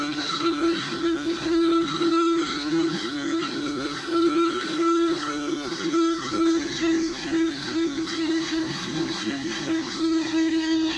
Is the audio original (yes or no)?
no